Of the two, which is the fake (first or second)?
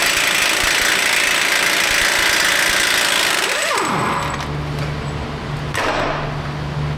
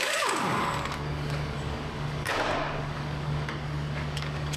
second